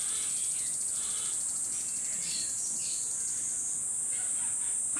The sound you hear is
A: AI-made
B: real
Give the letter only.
B